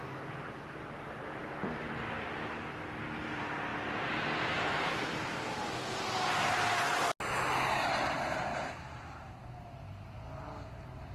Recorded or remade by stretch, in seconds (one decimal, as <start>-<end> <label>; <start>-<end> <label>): 0.0-3.7 recorded; 3.7-4.9 remade; 4.9-8.5 recorded; 8.5-9.3 remade; 9.3-11.1 recorded